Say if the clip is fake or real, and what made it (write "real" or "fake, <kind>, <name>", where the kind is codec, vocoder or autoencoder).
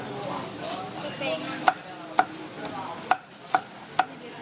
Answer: real